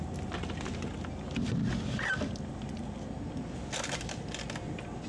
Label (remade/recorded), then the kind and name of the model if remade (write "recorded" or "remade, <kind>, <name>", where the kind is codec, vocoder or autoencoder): recorded